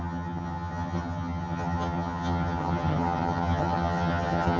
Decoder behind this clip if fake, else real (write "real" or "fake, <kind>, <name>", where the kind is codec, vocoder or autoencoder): fake, vocoder, HiFi-GAN